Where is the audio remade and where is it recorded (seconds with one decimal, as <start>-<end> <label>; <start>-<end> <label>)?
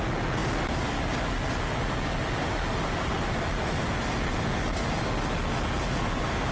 0.0-6.5 recorded